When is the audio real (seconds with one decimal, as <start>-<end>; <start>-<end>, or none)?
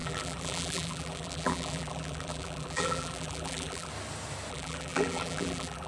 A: 3.9-4.5